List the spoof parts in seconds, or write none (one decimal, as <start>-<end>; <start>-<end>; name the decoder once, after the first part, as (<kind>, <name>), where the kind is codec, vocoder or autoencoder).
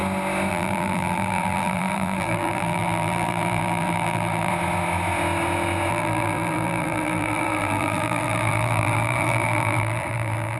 0.5-4.5 (vocoder, BigVGAN v2); 5.9-10.6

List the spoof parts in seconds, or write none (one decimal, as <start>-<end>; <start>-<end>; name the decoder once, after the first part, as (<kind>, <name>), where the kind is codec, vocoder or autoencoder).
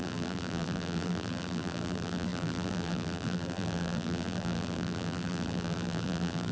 0.0-6.5 (vocoder, BigVGAN v2)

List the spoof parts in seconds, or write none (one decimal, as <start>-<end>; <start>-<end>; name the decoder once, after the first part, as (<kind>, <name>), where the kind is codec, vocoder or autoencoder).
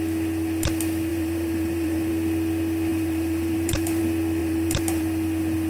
1.1-2.1 (vocoder, BigVGAN v2); 2.9-4.0; 4.4-5.0